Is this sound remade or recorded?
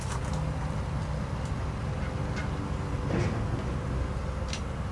recorded